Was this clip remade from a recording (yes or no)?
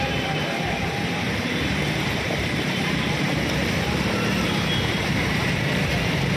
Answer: yes